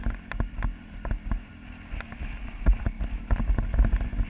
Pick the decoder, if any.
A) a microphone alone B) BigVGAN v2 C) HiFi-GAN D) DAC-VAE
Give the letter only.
A